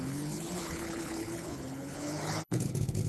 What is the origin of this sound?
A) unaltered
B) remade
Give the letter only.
B